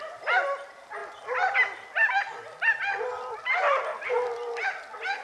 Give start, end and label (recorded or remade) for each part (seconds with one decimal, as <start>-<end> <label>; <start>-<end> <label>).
0.0-5.2 recorded